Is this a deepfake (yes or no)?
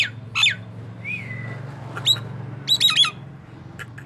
no